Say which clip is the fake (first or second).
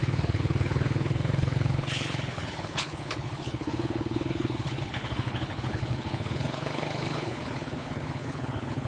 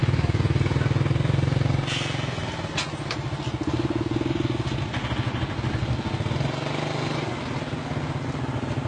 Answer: first